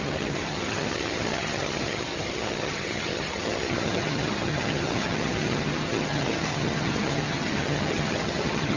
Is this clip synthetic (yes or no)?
yes